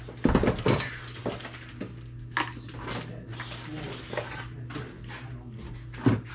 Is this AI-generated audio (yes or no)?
no